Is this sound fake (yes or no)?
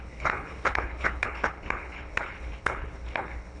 yes